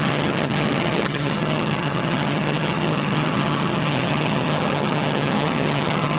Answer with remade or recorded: remade